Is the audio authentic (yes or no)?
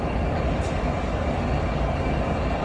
no